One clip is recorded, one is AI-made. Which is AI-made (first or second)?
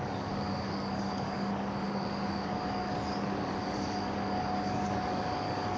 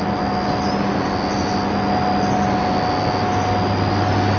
first